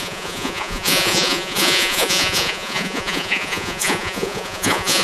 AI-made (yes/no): yes